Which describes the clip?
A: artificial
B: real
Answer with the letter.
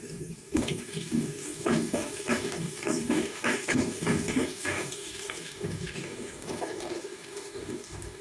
A